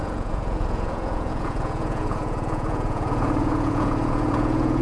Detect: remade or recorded remade